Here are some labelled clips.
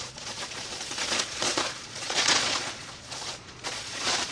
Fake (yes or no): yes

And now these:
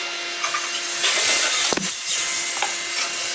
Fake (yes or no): no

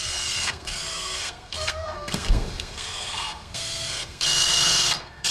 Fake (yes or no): yes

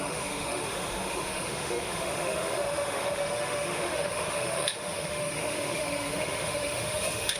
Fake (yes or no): yes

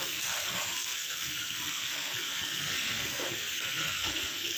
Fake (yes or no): yes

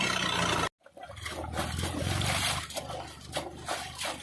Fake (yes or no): no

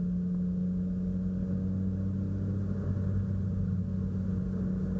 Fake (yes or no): no